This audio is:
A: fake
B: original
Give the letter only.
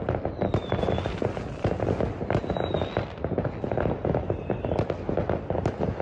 B